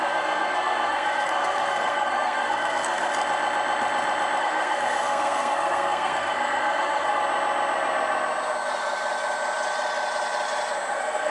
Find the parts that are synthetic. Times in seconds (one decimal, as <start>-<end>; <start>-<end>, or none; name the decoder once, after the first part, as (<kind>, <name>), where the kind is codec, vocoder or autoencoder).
0.0-3.1 (codec, SNAC); 4.4-7.2; 10.9-11.3